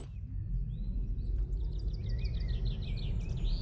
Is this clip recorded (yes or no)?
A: yes